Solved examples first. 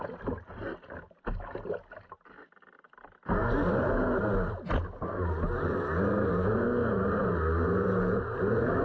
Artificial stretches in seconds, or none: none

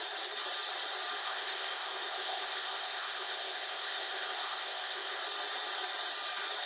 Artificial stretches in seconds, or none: 1.2-5.2 (codec, ZipCodec)

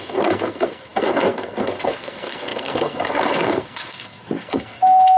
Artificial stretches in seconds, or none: 0.0-5.2 (codec, SNAC)

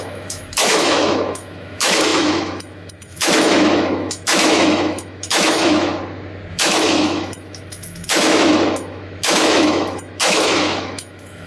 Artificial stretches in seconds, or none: 0.0-5.9 (autoencoder, DAC-VAE); 6.5-11.5

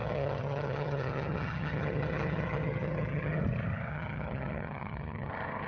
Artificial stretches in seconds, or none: 0.0-3.4 (vocoder, HiFi-GAN); 3.9-5.3